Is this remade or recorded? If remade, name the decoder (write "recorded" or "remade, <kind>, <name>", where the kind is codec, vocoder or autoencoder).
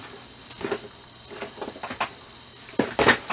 recorded